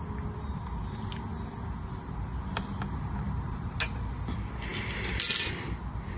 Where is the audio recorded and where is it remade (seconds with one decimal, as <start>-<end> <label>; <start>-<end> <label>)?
0.0-2.5 recorded; 2.5-3.8 remade; 3.8-6.2 recorded